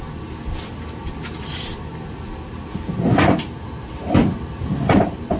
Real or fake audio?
real